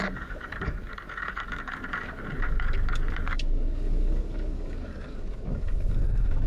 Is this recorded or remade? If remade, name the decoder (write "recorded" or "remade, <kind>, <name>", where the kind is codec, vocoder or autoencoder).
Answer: remade, codec, DAC